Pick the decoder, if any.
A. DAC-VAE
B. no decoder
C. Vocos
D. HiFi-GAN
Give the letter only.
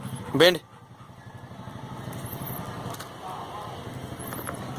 B